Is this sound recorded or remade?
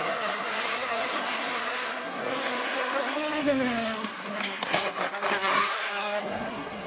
remade